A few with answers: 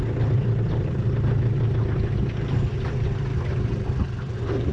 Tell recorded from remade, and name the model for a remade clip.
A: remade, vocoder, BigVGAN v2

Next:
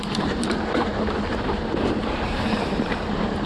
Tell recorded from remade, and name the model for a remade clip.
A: remade, vocoder, BigVGAN v2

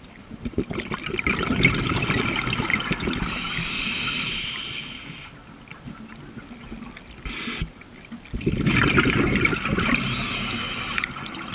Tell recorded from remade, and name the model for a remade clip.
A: recorded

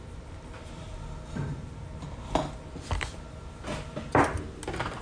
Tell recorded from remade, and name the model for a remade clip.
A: recorded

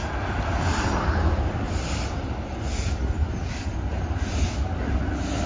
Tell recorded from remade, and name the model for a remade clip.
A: recorded